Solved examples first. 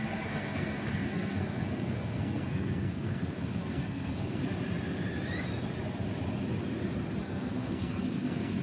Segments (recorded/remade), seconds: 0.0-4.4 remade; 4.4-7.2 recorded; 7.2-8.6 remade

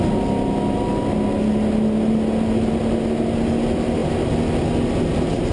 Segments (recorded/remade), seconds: 0.0-5.5 recorded

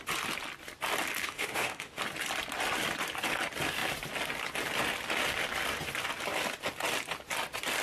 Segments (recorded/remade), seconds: 0.0-1.2 recorded; 1.2-2.0 remade; 2.0-7.8 recorded

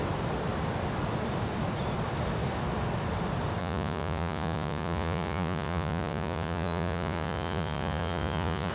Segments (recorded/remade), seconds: 0.0-3.6 recorded; 3.6-8.7 remade

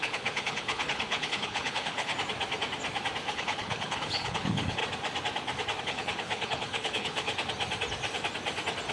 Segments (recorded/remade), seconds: 0.0-2.1 remade; 2.1-3.3 recorded; 3.3-4.8 remade; 4.8-5.8 recorded; 5.8-7.3 remade; 7.3-8.9 recorded

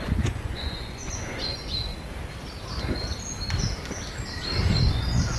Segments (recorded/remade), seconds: 0.0-1.9 remade; 1.9-4.9 recorded; 4.9-5.4 remade

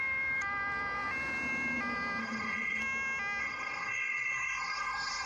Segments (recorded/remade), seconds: 0.0-2.2 recorded; 2.2-2.8 remade; 2.8-3.4 recorded; 3.4-5.3 remade

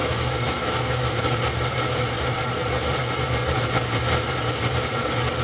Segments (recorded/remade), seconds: 0.0-1.4 remade; 1.4-5.4 recorded